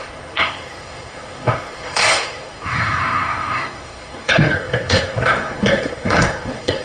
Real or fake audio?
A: fake